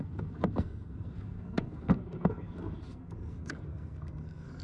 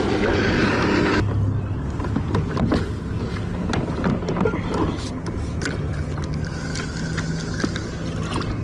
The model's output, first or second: first